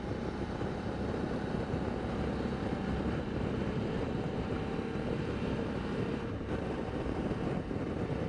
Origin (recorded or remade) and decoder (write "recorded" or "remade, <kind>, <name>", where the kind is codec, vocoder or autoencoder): remade, vocoder, BigVGAN v2